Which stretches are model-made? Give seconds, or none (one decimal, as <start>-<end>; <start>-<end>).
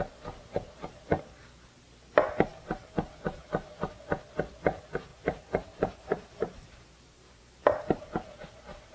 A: 5.1-8.0